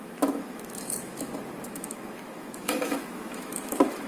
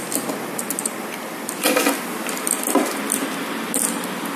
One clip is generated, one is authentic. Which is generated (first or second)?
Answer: first